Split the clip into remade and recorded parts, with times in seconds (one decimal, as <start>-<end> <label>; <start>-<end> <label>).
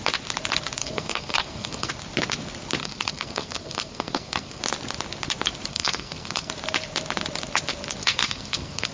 0.0-0.8 recorded; 0.8-1.9 remade; 1.9-2.8 recorded; 2.8-4.6 remade; 4.6-5.7 recorded; 5.7-6.5 remade; 6.5-8.0 recorded; 8.0-8.9 remade